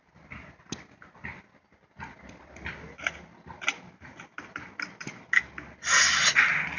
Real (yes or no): yes